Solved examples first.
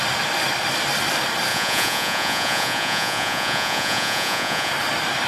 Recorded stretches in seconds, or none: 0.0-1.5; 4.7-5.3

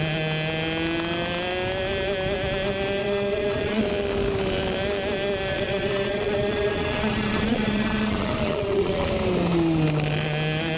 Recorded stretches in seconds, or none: 0.0-3.0; 3.8-5.5; 9.1-10.8

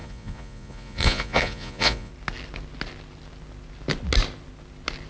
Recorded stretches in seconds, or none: 2.1-5.1

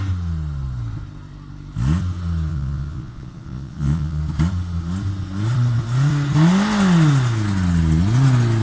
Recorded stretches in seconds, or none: 0.0-2.5; 4.2-8.6